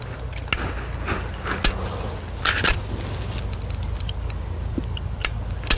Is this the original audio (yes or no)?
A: yes